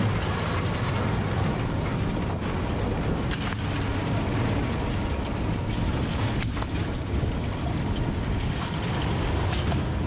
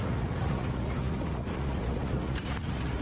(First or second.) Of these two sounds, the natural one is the first